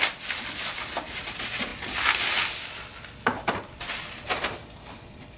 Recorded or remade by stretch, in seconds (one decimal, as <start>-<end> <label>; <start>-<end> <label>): 0.0-5.4 recorded